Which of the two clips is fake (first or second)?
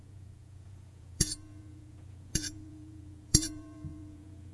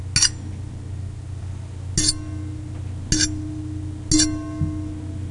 first